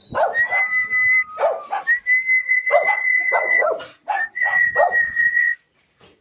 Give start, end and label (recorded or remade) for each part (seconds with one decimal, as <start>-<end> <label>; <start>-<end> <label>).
0.0-2.4 recorded; 2.4-6.2 remade